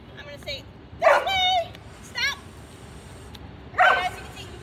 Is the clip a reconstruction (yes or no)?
no